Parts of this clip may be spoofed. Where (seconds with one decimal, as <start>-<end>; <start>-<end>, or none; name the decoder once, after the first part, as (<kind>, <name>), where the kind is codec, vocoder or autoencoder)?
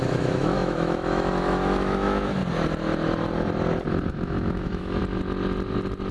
0.0-2.4 (autoencoder, DAC-VAE); 4.1-5.0